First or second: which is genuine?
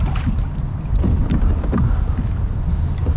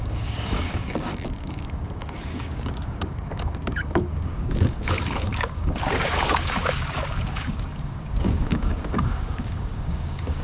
first